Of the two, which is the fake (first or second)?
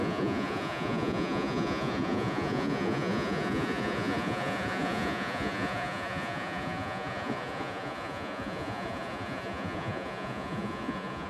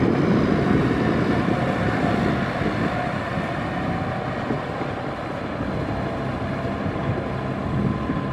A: first